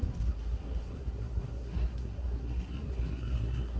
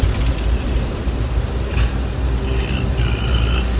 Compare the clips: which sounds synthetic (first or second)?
first